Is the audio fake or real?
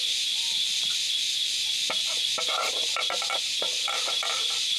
real